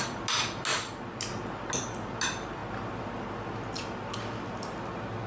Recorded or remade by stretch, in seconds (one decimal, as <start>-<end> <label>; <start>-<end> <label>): 0.0-5.3 recorded